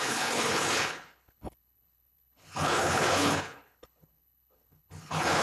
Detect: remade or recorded remade